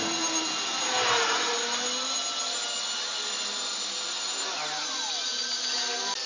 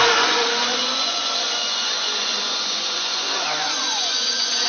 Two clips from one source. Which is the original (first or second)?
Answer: first